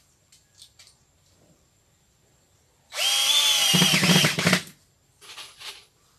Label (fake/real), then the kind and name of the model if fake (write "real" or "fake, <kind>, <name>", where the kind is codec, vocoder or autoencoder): fake, vocoder, BigVGAN v2